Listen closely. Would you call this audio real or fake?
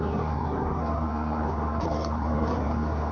fake